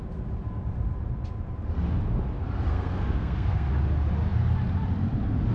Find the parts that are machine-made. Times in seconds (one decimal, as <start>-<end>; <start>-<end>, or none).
2.7-3.7